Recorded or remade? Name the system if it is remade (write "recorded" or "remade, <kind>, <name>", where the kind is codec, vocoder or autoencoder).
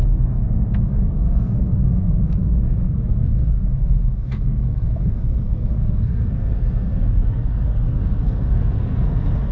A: remade, codec, SNAC